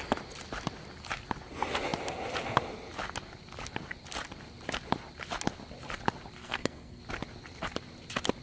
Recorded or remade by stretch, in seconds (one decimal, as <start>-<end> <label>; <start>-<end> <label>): 0.0-6.4 recorded; 6.4-7.0 remade; 7.0-8.4 recorded